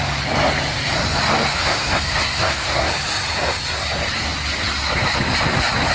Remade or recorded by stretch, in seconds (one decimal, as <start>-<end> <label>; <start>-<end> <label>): 0.0-1.6 recorded; 1.6-2.9 remade; 2.9-5.9 recorded